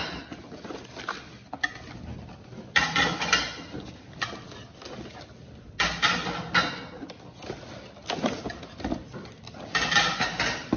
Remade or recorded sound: recorded